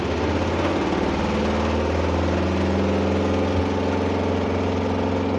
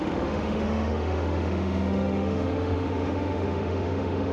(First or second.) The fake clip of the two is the second